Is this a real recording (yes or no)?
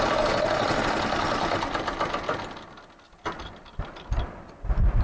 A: yes